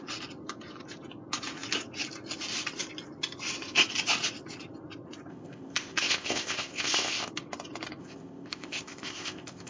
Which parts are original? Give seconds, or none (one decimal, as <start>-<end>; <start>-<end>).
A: 0.0-5.3; 7.3-8.0